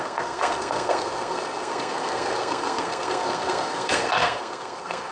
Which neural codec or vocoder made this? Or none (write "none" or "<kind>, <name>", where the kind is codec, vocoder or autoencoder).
codec, SNAC